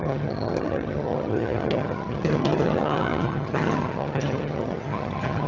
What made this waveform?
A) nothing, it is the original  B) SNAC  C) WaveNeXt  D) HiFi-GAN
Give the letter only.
D